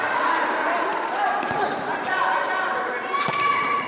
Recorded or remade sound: remade